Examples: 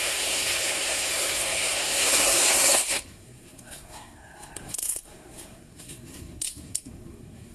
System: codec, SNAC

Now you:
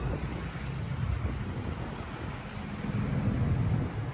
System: none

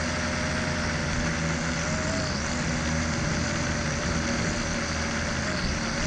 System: none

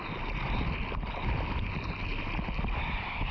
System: none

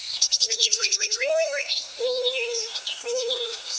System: codec, SNAC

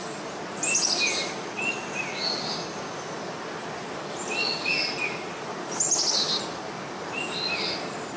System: none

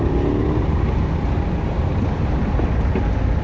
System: none